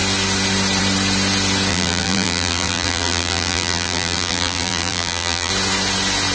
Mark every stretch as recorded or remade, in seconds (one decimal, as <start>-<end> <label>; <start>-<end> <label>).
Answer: 0.0-1.7 recorded; 1.7-5.5 remade; 5.5-6.3 recorded